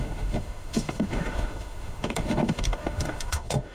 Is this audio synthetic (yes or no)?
yes